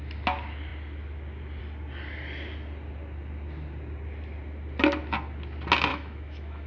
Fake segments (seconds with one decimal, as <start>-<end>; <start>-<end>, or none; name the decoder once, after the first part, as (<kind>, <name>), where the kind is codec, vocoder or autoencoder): 5.9-6.7 (autoencoder, DAC-VAE)